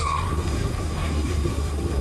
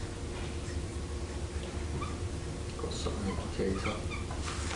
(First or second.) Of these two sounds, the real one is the second